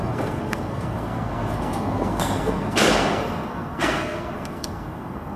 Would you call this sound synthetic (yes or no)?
yes